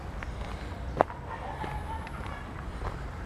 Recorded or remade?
recorded